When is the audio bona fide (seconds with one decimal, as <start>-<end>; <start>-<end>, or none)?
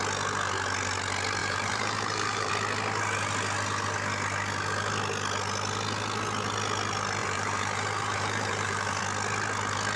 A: 0.0-1.4; 2.5-7.2; 9.0-10.0